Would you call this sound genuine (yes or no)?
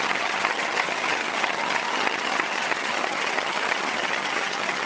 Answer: no